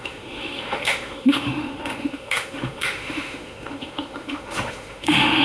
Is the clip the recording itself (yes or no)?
no